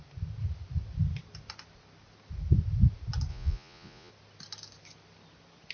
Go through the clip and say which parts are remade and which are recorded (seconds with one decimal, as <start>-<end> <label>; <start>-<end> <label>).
0.0-3.3 recorded; 3.3-4.1 remade; 4.1-5.7 recorded